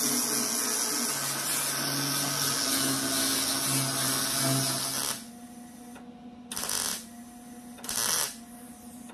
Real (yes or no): yes